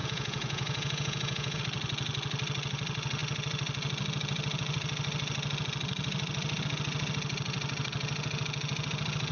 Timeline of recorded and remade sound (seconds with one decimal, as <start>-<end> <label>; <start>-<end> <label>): 0.0-1.6 remade; 1.6-9.3 recorded